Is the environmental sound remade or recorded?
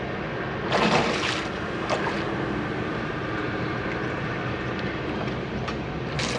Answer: recorded